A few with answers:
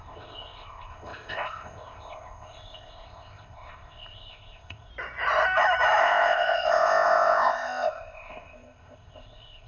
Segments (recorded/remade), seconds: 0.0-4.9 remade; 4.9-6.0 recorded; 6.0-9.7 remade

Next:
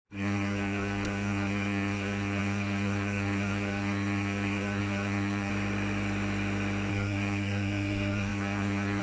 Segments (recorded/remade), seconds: 0.0-5.5 remade; 5.5-6.9 recorded; 6.9-9.0 remade

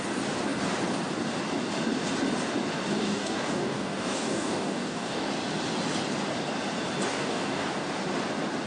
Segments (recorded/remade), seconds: 0.0-3.0 recorded; 3.0-5.3 remade; 5.3-7.1 recorded; 7.1-7.7 remade; 7.7-8.7 recorded

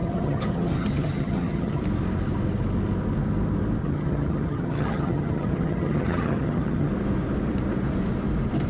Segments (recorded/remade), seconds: 0.0-1.8 remade; 1.8-3.8 recorded; 3.8-6.9 remade; 6.9-8.7 recorded

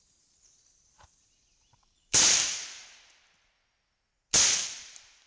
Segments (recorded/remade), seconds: 0.0-2.8 remade; 2.8-4.6 recorded; 4.6-5.3 remade

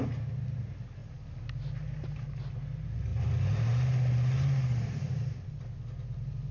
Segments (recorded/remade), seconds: 0.0-6.5 recorded

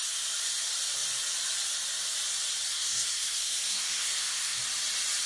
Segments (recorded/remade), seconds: 0.0-2.7 recorded; 2.7-4.6 remade; 4.6-5.3 recorded